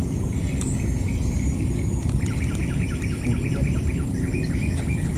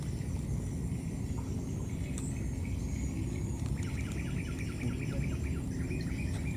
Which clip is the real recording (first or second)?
second